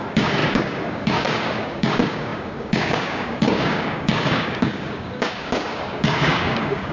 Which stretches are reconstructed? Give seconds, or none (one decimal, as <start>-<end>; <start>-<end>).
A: 0.0-6.9